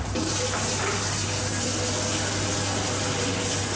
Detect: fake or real real